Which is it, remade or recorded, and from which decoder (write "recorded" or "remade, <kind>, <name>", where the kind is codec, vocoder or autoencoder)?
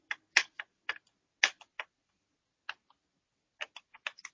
recorded